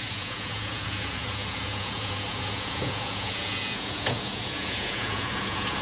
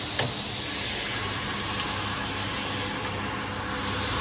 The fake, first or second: first